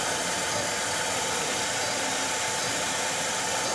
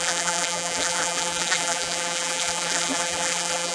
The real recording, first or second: first